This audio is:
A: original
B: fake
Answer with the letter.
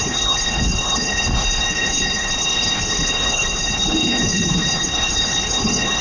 B